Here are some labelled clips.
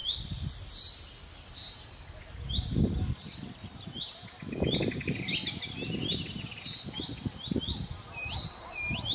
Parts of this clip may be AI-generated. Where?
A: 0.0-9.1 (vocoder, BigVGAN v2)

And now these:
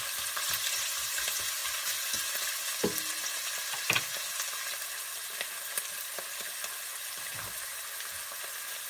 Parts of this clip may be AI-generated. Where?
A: none

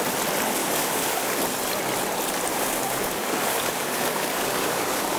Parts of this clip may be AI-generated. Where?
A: 0.6-1.4 (codec, DAC); 2.5-5.2

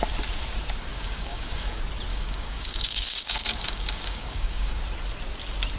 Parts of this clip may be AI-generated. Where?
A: 0.9-1.7 (codec, DAC); 2.1-4.8

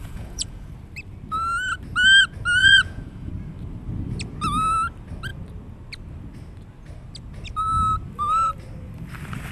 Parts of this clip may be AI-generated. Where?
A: 0.0-0.7 (vocoder, Vocos); 2.6-3.3

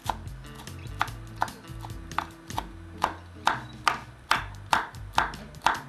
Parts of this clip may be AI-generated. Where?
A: none

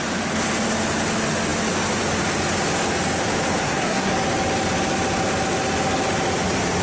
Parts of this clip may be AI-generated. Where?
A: 3.6-4.1 (codec, SNAC)